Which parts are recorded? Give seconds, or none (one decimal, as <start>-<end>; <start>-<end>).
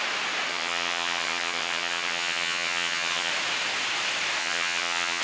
0.0-0.5; 3.3-4.4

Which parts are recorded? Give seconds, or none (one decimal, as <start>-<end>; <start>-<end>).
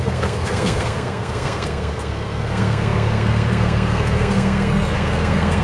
none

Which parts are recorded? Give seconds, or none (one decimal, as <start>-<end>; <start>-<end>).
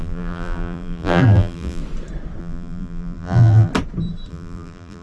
1.8-2.4; 3.7-4.3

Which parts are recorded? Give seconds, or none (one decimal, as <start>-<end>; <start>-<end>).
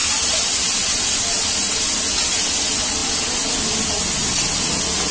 0.0-5.1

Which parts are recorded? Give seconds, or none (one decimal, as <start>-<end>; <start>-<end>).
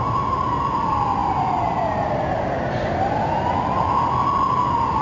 0.0-5.0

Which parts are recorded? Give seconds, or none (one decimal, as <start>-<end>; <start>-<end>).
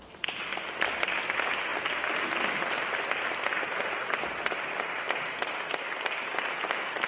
0.0-7.1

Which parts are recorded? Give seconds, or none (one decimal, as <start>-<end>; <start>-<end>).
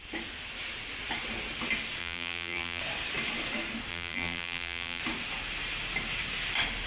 0.0-2.0; 2.8-3.9; 5.0-6.9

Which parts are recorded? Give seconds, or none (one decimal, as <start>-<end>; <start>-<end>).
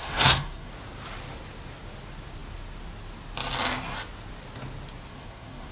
0.7-5.1